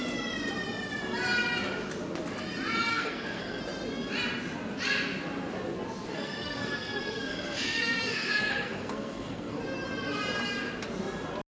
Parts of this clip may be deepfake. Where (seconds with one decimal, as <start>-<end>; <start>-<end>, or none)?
2.9-3.6; 6.1-9.6